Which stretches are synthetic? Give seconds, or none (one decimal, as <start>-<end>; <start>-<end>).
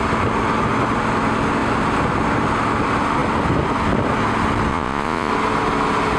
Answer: 4.7-5.3